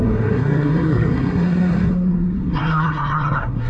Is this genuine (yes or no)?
no